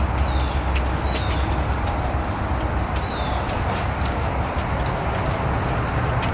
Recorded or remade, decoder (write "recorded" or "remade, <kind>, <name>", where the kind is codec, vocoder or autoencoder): recorded